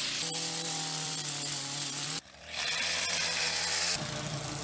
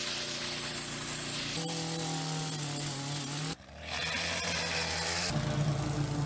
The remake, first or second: first